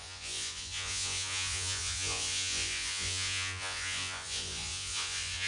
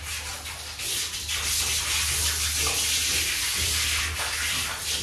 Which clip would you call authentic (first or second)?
second